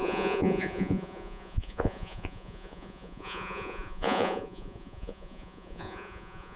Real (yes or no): no